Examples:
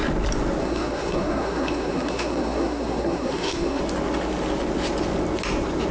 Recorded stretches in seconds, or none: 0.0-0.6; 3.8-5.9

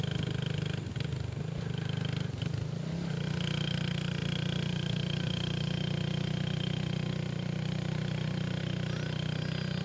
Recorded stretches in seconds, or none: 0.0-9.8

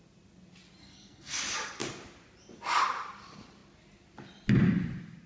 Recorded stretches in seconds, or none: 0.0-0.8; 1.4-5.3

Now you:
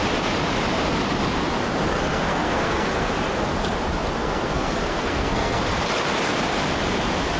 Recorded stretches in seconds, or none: 0.0-1.9; 3.1-4.2; 5.6-7.4

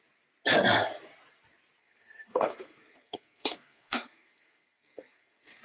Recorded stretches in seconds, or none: 0.0-1.8